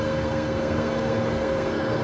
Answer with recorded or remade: remade